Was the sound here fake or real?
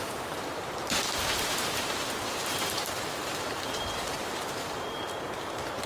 fake